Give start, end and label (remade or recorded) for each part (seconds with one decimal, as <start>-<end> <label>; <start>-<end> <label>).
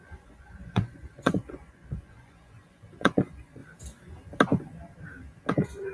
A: 0.0-3.6 remade; 3.6-5.5 recorded; 5.5-5.9 remade